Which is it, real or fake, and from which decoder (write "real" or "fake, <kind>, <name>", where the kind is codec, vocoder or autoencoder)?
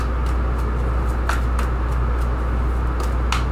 real